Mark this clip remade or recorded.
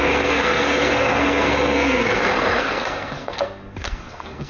remade